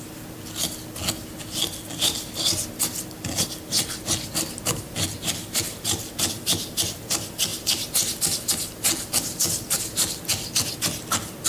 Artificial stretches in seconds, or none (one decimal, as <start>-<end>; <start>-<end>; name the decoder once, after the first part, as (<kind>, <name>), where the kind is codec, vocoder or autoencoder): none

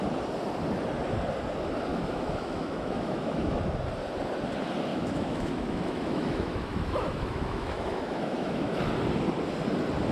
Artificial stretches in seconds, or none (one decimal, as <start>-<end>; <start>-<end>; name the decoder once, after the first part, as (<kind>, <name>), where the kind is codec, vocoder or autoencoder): 1.9-3.6 (autoencoder, DAC-VAE); 4.9-8.8

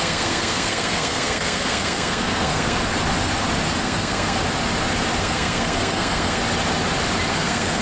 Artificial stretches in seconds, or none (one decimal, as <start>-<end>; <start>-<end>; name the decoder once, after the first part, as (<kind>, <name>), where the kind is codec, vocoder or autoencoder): 0.0-2.8 (codec, SNAC); 3.8-4.4; 5.2-6.4; 7.3-7.8

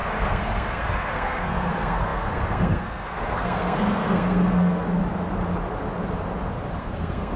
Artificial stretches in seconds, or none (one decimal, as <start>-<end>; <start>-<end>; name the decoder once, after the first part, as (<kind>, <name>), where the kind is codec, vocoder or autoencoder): 0.0-5.0 (codec, SNAC); 6.8-7.4

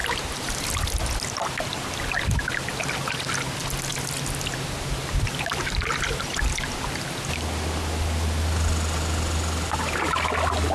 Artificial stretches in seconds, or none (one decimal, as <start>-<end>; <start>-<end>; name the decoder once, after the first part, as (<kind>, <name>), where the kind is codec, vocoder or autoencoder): 0.0-0.5 (vocoder, BigVGAN v2)

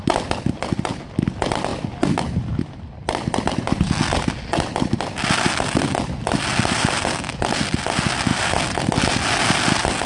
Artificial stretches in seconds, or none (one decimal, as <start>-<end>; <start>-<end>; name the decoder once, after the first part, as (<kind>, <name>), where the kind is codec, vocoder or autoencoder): none

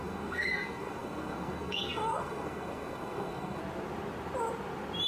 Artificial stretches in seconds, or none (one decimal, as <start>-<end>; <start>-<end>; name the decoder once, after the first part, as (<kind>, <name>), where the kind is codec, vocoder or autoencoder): 0.0-3.6 (codec, SNAC)